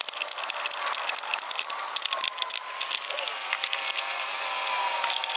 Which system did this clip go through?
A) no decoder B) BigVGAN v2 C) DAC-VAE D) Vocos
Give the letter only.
A